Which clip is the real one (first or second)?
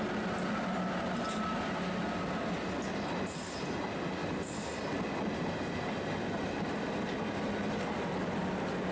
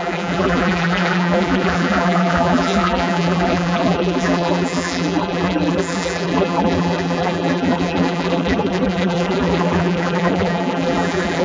first